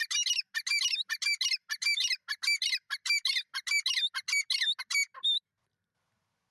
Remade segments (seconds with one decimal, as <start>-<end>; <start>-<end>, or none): none